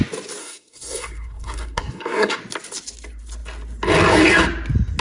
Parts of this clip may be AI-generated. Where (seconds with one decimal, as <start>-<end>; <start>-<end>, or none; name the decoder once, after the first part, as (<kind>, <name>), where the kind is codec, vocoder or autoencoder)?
0.4-2.4 (codec, SNAC)